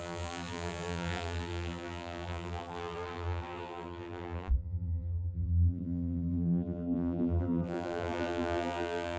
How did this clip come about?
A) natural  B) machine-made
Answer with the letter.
B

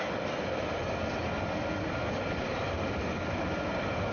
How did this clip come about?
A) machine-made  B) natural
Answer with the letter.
B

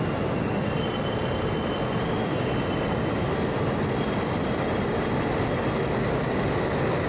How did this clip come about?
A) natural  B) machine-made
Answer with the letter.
A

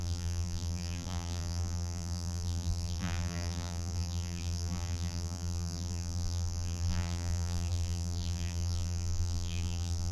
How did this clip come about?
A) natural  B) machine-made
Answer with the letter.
B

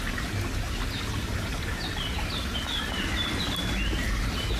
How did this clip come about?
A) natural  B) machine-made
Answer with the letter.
A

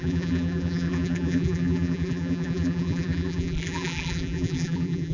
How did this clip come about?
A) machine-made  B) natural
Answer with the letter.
A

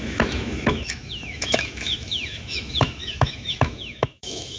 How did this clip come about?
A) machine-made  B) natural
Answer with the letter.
A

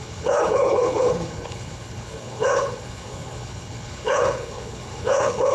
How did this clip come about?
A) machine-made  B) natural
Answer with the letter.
A